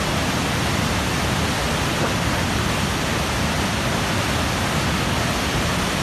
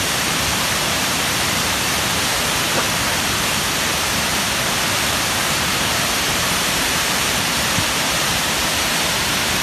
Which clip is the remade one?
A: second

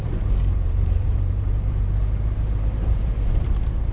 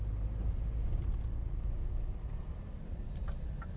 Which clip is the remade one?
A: first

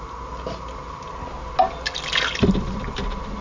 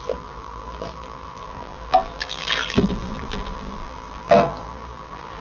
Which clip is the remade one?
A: second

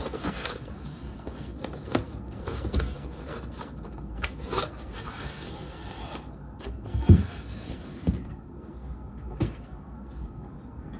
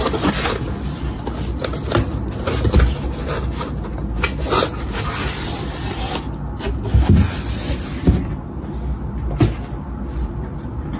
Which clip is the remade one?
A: first